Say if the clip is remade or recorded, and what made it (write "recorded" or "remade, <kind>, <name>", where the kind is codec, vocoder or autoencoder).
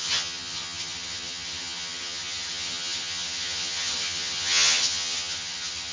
remade, vocoder, HiFi-GAN